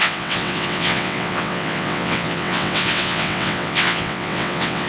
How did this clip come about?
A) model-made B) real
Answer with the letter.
A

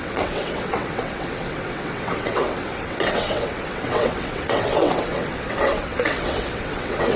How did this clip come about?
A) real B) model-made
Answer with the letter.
B